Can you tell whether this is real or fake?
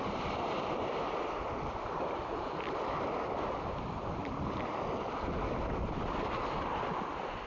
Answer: real